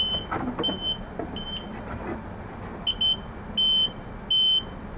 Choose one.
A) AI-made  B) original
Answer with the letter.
B